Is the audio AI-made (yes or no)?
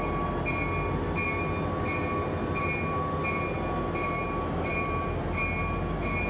no